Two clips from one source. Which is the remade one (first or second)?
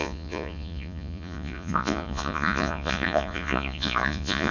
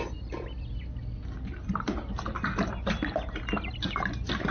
first